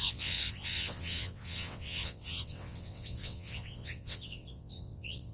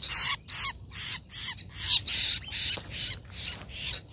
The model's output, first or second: first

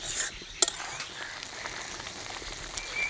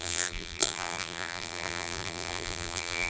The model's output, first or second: second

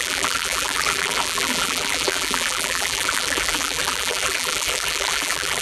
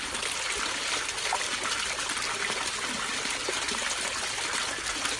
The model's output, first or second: first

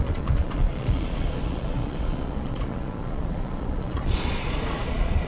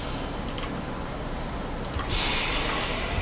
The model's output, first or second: first